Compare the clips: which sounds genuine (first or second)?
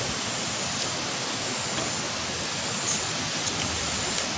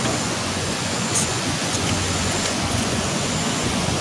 first